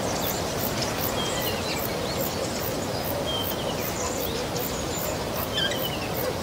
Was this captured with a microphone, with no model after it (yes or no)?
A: yes